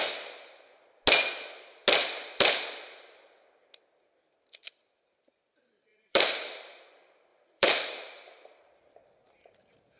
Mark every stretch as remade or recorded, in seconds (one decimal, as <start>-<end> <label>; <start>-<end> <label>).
0.0-5.9 recorded; 5.9-6.8 remade; 6.8-7.3 recorded; 7.3-8.7 remade; 8.7-10.0 recorded